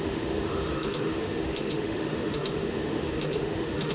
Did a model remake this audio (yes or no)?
yes